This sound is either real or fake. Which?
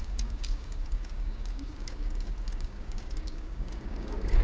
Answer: fake